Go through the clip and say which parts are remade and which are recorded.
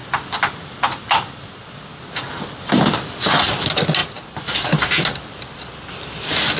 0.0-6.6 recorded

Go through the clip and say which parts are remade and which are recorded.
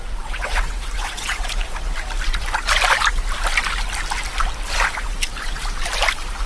0.0-1.5 remade; 1.5-6.5 recorded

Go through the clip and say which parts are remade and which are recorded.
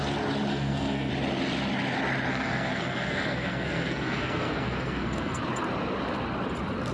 0.0-0.5 recorded; 0.5-1.1 remade; 1.1-2.3 recorded; 2.3-5.4 remade; 5.4-6.9 recorded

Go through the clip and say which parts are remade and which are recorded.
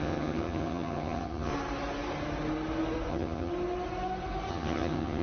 0.0-1.5 remade; 1.5-3.1 recorded; 3.1-3.5 remade; 3.5-4.5 recorded; 4.5-5.2 remade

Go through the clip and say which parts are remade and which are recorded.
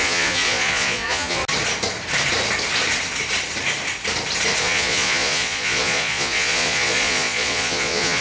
0.0-1.4 remade; 1.4-4.6 recorded; 4.6-8.2 remade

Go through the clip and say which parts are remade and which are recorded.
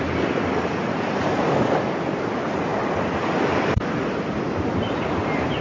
0.0-5.6 recorded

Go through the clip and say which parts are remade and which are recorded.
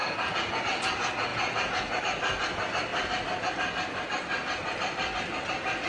0.0-0.6 remade; 0.6-1.3 recorded; 1.3-2.0 remade; 2.0-5.9 recorded